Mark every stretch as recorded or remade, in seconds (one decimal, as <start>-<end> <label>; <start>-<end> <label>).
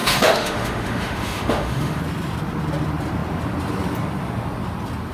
0.0-2.0 remade; 2.0-5.1 recorded